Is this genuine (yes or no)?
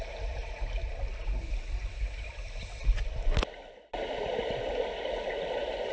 yes